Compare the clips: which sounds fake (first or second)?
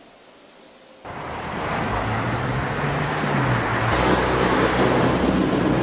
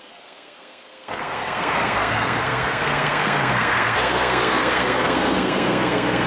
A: second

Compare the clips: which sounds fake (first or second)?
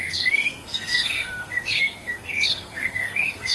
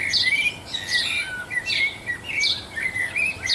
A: first